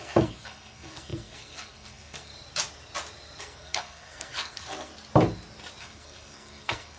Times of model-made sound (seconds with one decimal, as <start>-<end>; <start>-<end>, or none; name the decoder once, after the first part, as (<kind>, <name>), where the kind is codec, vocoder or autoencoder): 0.0-2.3 (codec, SNAC); 3.4-4.9; 5.8-7.0